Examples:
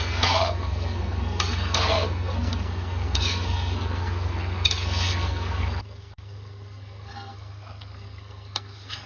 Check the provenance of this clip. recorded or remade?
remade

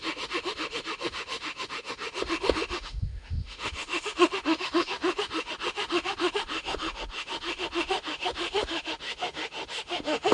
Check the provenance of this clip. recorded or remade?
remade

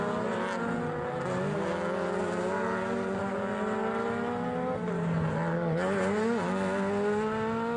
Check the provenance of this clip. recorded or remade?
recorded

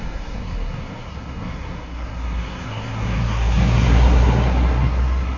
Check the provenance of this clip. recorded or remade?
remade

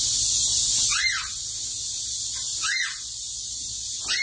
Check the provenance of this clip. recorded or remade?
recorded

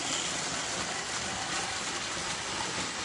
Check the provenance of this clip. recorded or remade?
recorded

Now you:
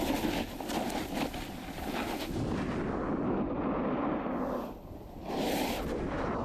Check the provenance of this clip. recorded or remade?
recorded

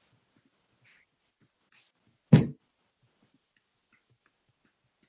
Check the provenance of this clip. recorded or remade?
recorded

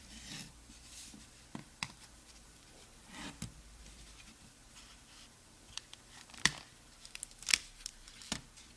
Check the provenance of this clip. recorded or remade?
remade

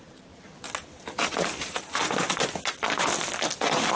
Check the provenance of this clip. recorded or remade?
recorded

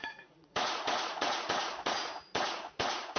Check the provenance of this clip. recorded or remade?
remade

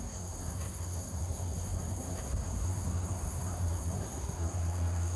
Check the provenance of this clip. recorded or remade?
remade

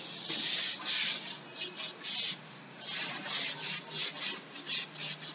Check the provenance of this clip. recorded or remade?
recorded